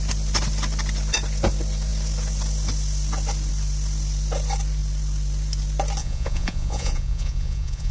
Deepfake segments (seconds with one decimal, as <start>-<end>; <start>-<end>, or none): 6.0-7.9